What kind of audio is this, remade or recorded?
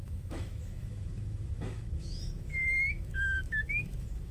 remade